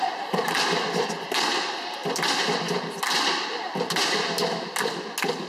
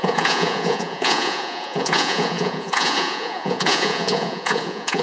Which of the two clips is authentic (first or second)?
first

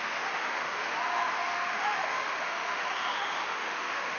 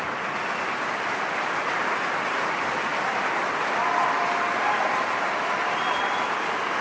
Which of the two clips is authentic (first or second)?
second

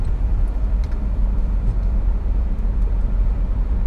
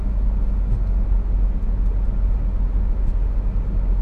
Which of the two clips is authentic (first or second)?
second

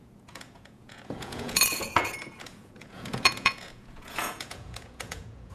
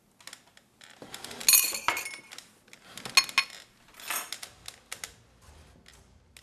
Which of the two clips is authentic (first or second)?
second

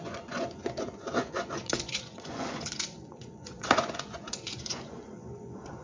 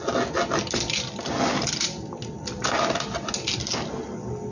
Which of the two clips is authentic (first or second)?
second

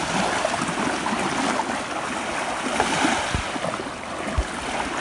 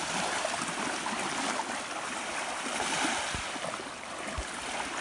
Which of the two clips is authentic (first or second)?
first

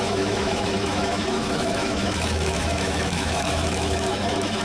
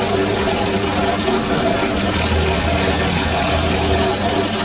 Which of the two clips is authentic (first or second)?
second